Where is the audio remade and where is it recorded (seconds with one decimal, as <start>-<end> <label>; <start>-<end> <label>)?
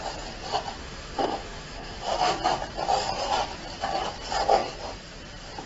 0.0-0.8 recorded; 0.8-2.3 remade; 2.3-5.7 recorded